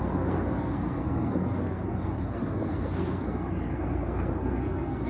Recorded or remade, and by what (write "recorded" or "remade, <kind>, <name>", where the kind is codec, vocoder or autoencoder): remade, codec, SNAC